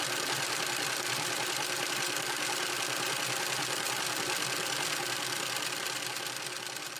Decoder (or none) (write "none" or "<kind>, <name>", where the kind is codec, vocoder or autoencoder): none